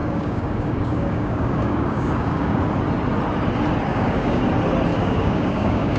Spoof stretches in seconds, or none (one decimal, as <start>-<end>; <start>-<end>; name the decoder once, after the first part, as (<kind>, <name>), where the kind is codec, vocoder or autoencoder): 0.0-2.6 (codec, DAC); 3.9-4.4; 4.9-6.0